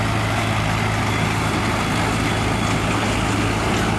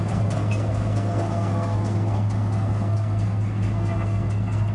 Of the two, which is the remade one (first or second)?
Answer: second